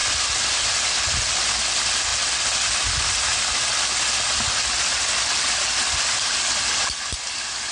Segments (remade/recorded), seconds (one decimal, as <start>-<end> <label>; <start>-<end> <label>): 0.0-7.7 recorded